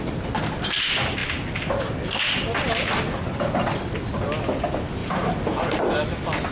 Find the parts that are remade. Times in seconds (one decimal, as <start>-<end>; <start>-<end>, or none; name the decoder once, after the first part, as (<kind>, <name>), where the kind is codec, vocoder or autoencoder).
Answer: none